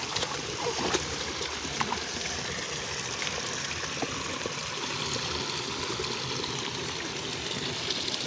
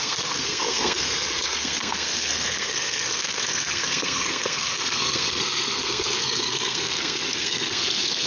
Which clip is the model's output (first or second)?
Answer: second